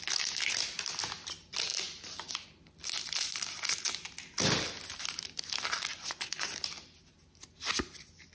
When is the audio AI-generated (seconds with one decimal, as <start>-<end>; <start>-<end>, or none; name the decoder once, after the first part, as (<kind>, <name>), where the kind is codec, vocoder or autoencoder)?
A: 5.9-6.5 (vocoder, Vocos)